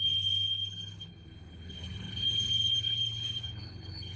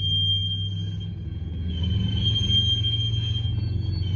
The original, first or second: second